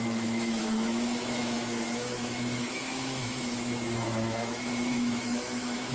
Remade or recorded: remade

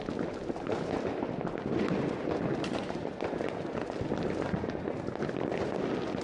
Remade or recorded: recorded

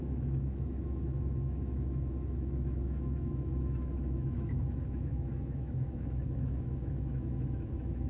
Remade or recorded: remade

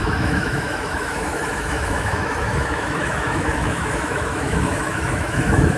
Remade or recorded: remade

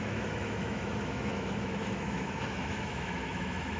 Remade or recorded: remade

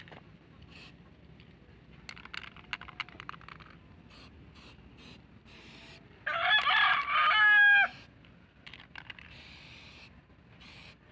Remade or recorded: recorded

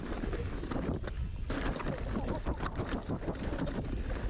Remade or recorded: recorded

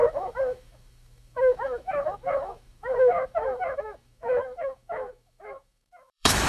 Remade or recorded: remade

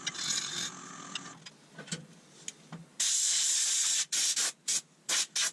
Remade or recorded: recorded